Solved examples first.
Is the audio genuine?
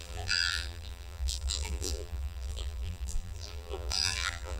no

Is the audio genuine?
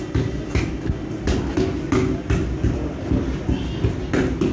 yes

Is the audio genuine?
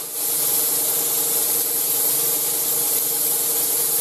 yes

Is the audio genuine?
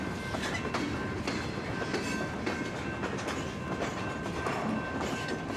yes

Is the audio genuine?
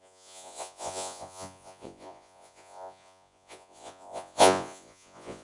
no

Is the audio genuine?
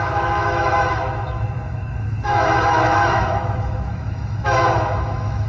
no